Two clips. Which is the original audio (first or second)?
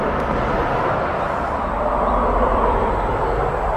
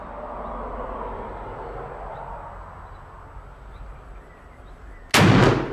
second